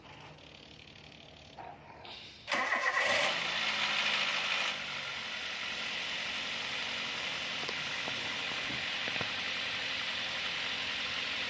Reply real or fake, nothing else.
real